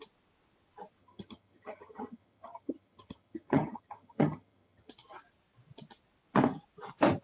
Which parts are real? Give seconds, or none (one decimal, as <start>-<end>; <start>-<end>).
0.0-1.0; 4.9-7.2

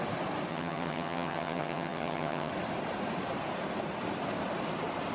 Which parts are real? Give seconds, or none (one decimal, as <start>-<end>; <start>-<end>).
0.0-0.5; 2.5-5.1

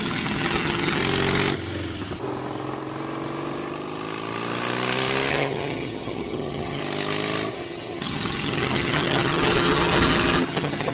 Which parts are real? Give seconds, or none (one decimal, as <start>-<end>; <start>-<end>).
1.0-5.3; 6.8-7.5

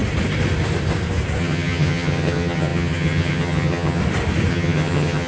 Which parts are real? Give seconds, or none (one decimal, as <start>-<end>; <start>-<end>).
0.0-1.4; 4.0-4.5